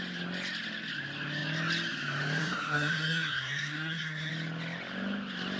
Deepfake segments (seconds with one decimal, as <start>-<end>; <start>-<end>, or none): 2.4-4.3